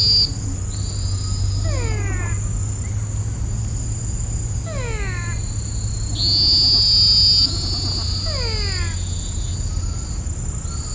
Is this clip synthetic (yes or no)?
no